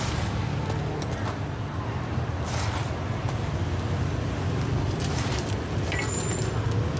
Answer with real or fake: real